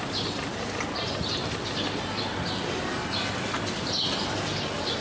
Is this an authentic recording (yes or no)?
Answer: yes